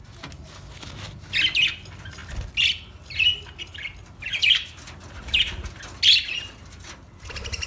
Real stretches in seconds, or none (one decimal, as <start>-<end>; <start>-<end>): 0.0-7.7